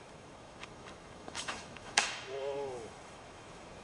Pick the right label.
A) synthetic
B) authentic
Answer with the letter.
A